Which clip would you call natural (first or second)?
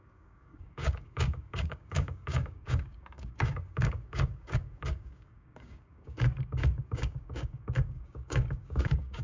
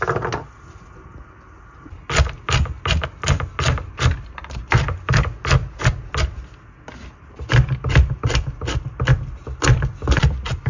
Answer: second